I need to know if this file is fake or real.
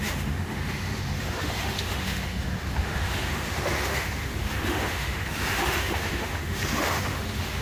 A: fake